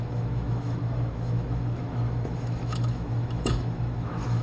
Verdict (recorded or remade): remade